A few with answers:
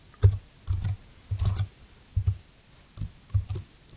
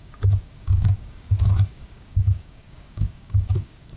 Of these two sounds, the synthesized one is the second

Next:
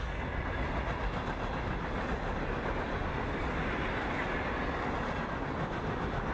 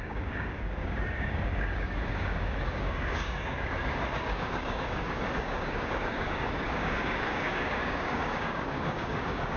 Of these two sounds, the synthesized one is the second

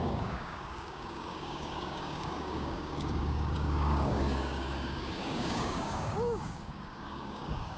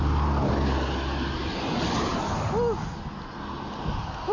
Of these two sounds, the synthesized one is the first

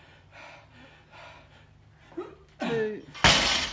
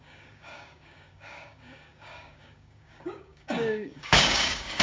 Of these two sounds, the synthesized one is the second